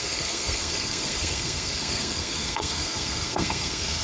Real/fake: fake